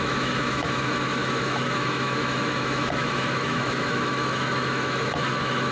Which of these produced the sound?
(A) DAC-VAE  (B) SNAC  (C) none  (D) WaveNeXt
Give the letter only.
A